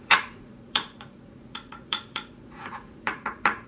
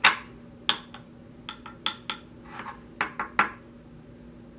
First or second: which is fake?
first